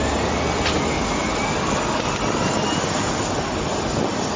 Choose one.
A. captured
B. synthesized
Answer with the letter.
A